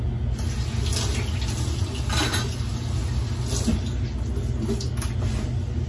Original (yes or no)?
yes